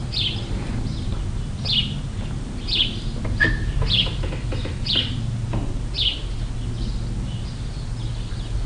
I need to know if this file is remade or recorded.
recorded